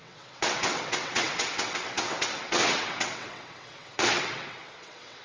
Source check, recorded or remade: remade